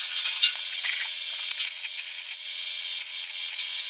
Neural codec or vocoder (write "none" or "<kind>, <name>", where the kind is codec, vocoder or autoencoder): vocoder, WaveNeXt